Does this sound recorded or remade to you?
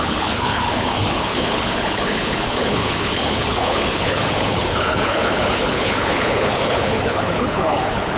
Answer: remade